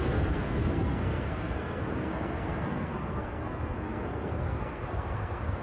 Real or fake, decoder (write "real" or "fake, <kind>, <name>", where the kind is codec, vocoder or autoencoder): fake, codec, SNAC